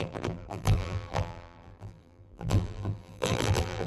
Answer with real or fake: fake